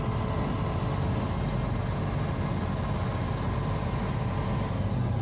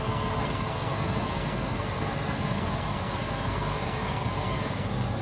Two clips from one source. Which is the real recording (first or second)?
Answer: first